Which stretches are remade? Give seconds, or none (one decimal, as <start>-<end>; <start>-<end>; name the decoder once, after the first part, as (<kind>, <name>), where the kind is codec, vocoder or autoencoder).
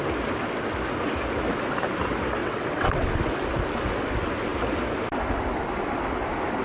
2.4-3.2 (vocoder, WaveNeXt)